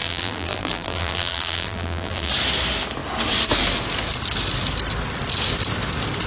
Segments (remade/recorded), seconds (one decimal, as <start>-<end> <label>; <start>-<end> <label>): 0.0-2.3 remade; 2.3-6.3 recorded